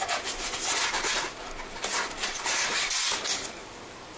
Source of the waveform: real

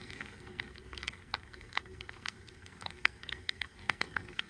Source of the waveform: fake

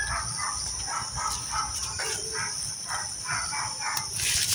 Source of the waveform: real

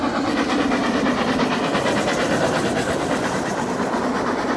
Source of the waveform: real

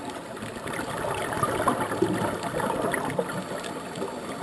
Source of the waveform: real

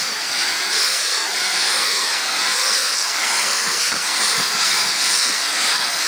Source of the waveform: fake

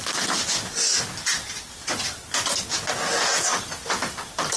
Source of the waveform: real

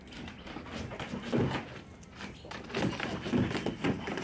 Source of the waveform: real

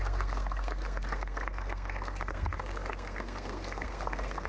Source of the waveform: fake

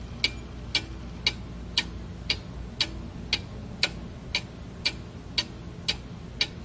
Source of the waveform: real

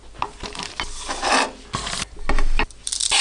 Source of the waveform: real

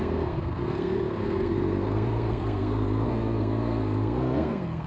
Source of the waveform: fake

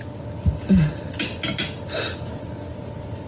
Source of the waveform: real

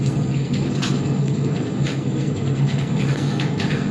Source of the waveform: fake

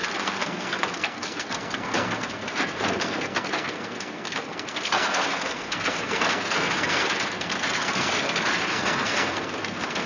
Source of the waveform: fake